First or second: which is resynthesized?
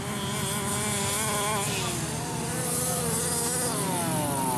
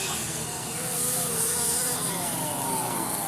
second